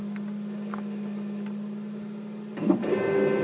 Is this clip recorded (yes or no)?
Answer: yes